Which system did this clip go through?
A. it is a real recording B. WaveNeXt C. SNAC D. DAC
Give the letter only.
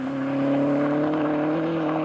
A